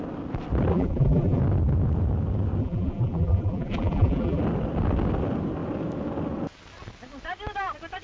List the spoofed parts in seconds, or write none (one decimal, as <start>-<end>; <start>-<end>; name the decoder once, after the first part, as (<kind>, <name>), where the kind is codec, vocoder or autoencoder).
0.7-1.4 (vocoder, BigVGAN v2); 2.6-4.4